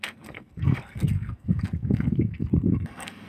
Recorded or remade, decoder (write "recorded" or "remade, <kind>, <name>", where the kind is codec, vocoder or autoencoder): remade, codec, SNAC